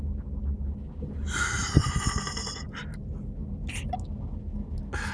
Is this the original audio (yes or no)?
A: yes